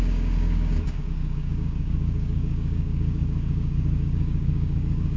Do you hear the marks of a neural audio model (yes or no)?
yes